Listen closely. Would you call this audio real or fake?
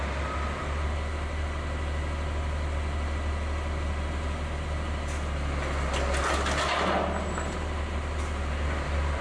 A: real